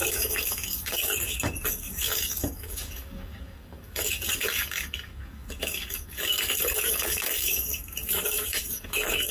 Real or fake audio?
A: fake